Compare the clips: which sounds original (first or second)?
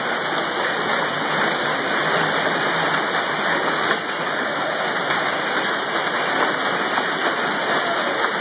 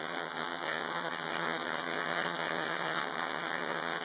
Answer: first